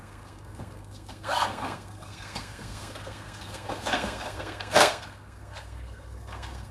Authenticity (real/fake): fake